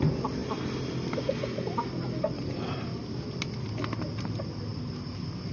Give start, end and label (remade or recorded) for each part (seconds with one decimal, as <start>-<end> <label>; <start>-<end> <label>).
0.0-5.5 recorded